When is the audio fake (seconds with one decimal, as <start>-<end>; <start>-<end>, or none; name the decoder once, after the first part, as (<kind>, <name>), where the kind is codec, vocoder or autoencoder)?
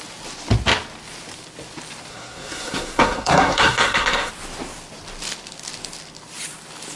2.1-4.3 (codec, SNAC)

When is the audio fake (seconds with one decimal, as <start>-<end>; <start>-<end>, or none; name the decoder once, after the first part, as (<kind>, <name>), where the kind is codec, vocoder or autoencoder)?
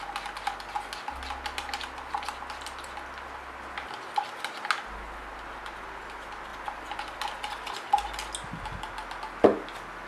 none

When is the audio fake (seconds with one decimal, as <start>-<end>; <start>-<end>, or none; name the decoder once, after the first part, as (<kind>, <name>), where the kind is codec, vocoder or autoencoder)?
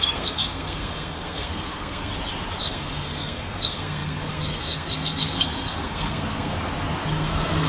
0.0-2.1 (codec, SNAC); 2.6-6.5; 7.1-7.7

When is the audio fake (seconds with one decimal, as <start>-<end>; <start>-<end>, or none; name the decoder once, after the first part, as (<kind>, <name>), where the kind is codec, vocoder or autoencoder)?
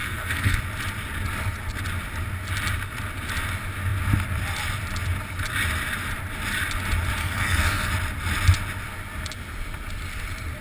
0.0-0.6 (codec, SNAC); 7.2-7.9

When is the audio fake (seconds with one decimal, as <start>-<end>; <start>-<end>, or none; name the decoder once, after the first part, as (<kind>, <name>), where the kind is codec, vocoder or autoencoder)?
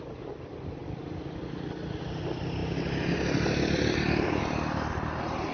none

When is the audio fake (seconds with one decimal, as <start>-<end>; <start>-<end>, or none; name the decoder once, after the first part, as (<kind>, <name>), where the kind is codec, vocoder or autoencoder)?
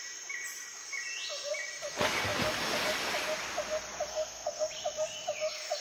4.1-4.7 (codec, SNAC)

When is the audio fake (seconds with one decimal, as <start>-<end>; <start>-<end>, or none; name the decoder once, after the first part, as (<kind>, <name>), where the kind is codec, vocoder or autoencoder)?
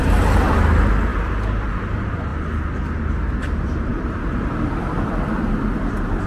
none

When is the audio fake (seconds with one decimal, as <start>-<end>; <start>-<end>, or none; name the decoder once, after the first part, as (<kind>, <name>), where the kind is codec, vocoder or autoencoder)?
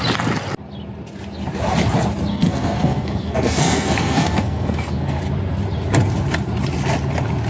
2.3-5.2 (codec, SNAC)